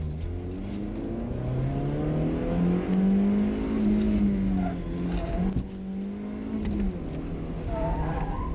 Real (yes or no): yes